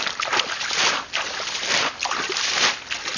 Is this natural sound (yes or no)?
yes